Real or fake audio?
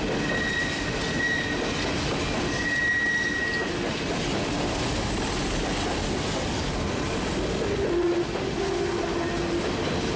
real